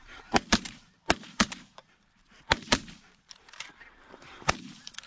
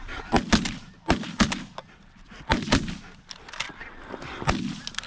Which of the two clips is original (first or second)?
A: second